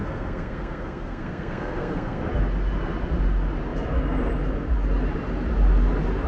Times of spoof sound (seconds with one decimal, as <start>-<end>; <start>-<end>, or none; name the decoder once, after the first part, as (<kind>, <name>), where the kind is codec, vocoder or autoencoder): 0.0-2.3 (codec, SNAC)

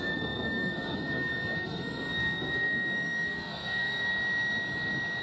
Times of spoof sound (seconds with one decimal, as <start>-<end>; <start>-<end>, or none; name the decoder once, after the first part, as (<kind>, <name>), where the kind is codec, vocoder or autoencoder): 0.0-4.1 (codec, SNAC)

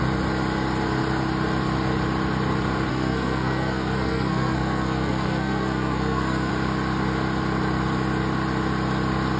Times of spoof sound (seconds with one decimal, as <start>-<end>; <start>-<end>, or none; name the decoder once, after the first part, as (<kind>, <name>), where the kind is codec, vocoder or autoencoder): 2.9-6.5 (codec, SNAC)